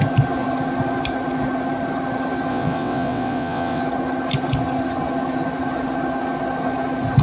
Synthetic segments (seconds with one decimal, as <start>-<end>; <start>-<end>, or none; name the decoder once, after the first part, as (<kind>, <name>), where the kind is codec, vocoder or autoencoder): 2.5-3.8 (vocoder, WaveNeXt)